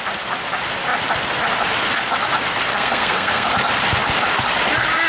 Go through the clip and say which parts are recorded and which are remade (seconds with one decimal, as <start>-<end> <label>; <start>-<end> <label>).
0.0-2.7 recorded; 2.7-3.5 remade; 3.5-5.1 recorded